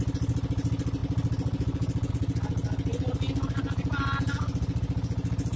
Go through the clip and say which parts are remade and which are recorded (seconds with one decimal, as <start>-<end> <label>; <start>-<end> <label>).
0.0-5.6 recorded